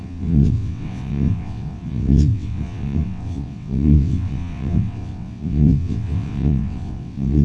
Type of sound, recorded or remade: remade